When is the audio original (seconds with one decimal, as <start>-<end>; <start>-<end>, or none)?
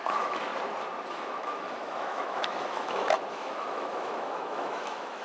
0.5-1.1